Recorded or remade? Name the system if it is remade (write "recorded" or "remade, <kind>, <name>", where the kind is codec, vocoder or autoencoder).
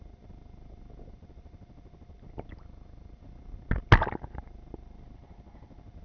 recorded